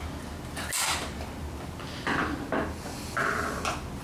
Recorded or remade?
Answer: recorded